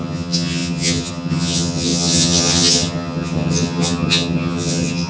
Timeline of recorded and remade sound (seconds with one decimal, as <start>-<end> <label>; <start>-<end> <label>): 0.0-5.1 remade